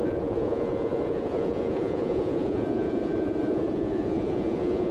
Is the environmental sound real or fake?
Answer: fake